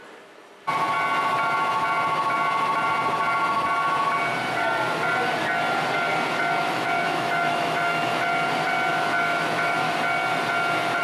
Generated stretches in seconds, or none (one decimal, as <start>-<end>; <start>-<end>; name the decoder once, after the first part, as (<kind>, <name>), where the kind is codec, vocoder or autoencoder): 6.6-8.0 (autoencoder, DAC-VAE); 8.9-9.9